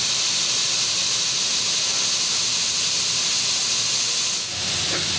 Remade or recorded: recorded